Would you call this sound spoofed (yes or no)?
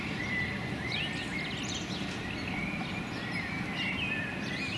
no